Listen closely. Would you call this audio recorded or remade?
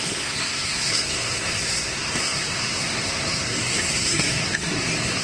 remade